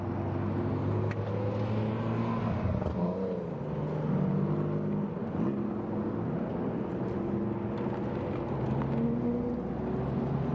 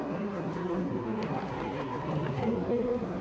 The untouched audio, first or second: first